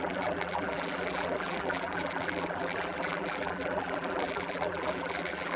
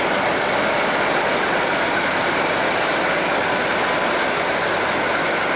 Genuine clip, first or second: second